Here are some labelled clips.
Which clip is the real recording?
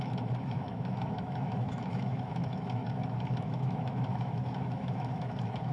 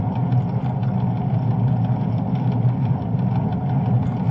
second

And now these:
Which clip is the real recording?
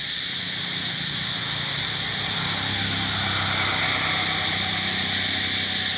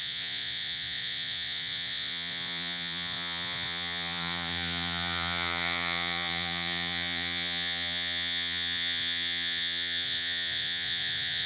first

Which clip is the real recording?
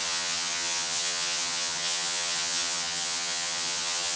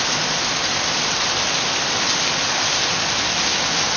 second